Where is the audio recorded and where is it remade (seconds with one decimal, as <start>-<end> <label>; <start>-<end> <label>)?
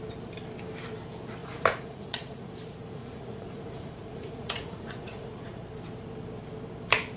0.0-1.4 recorded; 1.4-2.5 remade; 2.5-3.0 recorded; 3.0-5.6 remade; 5.6-7.2 recorded